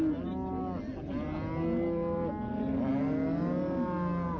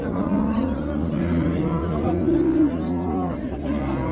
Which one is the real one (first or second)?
first